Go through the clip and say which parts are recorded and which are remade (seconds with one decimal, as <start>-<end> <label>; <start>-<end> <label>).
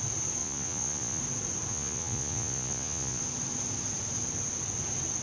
0.0-0.4 recorded; 0.4-1.2 remade; 1.2-1.7 recorded; 1.7-3.2 remade; 3.2-5.2 recorded